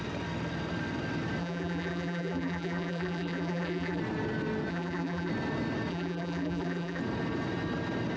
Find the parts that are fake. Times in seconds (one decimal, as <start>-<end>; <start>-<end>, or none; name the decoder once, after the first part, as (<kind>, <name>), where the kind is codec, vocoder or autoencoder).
1.4-4.0 (vocoder, BigVGAN v2); 4.7-5.3; 5.9-7.0